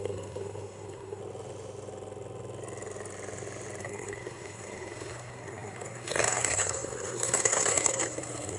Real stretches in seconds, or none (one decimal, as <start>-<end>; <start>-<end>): 1.2-3.8